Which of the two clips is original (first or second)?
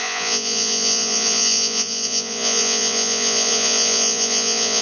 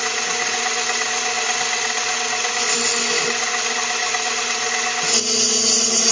second